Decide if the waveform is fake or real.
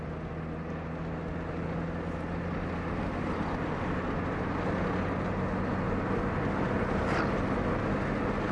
real